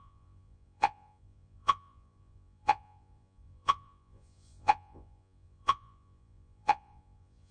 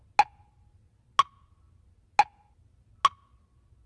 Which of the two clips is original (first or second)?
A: second